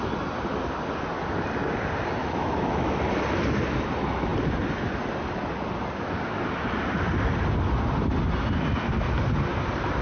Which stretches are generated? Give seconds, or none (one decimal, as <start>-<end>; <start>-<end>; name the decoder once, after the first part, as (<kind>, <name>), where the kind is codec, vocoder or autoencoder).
2.2-3.0 (autoencoder, DAC-VAE)